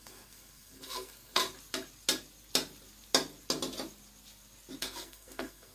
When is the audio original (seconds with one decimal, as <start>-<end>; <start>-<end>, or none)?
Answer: 1.4-4.8